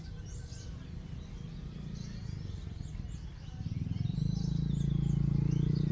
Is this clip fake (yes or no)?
no